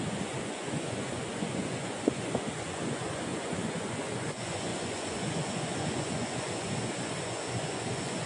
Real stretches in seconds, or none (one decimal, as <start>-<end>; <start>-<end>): none